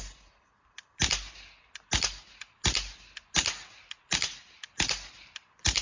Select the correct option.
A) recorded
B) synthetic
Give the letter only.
A